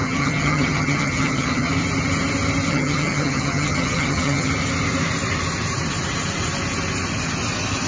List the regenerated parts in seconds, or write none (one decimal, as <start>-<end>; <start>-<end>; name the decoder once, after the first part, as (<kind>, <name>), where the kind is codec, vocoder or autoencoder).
0.0-1.7 (vocoder, HiFi-GAN); 2.7-4.5